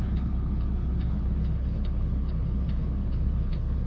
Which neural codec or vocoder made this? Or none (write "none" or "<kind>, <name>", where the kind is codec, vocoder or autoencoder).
codec, HILCodec